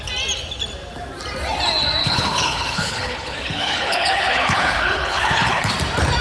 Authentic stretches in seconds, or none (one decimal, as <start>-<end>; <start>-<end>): 0.0-2.0; 5.7-6.2